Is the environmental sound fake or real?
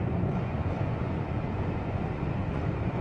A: fake